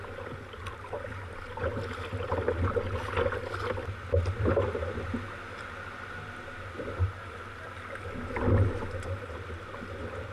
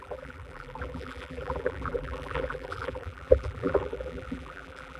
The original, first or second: first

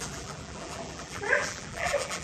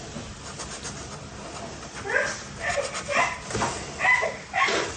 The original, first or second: second